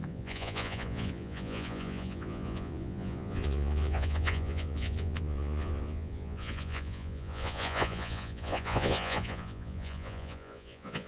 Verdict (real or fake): fake